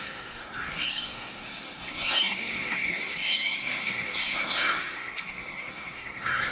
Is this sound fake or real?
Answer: fake